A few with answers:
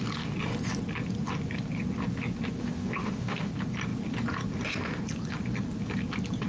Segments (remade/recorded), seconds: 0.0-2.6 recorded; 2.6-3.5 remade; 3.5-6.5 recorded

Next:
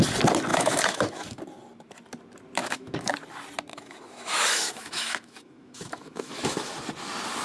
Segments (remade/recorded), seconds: 0.0-0.5 recorded; 0.5-1.4 remade; 1.4-2.6 recorded; 2.6-3.1 remade; 3.1-3.7 recorded; 3.7-6.7 remade; 6.7-7.4 recorded

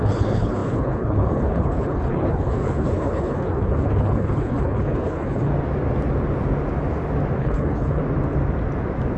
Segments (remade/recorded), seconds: 0.0-5.5 remade; 5.5-7.4 recorded; 7.4-8.0 remade; 8.0-9.2 recorded

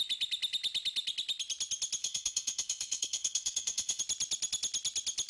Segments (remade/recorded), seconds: 0.0-2.0 recorded; 2.0-4.0 remade; 4.0-5.3 recorded

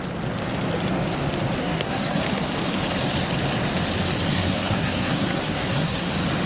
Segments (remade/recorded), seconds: 0.0-1.6 recorded; 1.6-2.2 remade; 2.2-4.3 recorded; 4.3-6.1 remade; 6.1-6.5 recorded

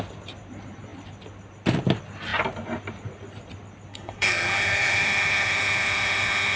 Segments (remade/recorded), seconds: 0.0-3.9 recorded; 3.9-6.6 remade